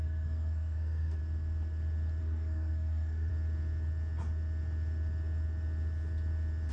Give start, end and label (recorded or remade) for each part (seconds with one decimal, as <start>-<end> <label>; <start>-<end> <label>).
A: 0.0-1.2 remade; 1.2-2.2 recorded; 2.2-3.3 remade; 3.3-6.7 recorded